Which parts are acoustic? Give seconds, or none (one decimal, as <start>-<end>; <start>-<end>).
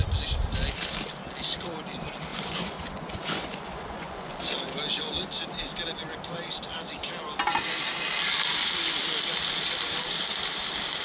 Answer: 0.0-2.3; 4.4-11.0